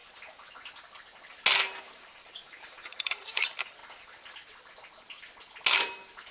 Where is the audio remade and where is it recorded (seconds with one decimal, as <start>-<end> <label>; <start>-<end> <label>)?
0.0-1.8 recorded; 1.8-3.8 remade; 3.8-6.3 recorded